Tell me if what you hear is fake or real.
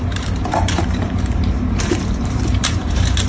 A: fake